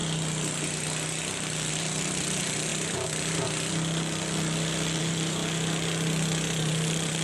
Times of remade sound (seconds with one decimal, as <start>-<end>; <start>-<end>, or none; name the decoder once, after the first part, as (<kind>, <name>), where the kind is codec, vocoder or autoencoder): 1.7-2.7 (vocoder, BigVGAN v2); 5.0-5.4; 6.6-7.2